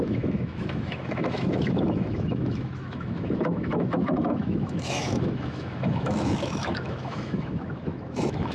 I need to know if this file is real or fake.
fake